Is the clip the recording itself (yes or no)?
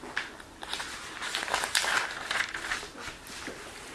yes